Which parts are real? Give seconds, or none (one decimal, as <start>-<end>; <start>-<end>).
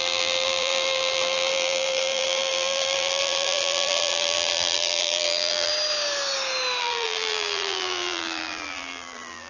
5.7-6.8